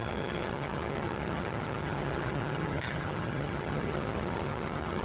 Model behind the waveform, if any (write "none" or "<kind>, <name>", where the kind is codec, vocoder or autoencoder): vocoder, HiFi-GAN